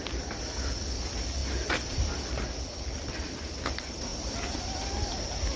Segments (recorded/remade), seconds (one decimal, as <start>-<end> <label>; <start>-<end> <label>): 0.0-5.6 recorded